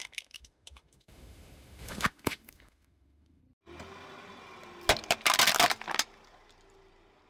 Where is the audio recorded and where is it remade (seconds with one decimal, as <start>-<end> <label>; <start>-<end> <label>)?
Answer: 0.0-3.4 remade; 3.4-7.3 recorded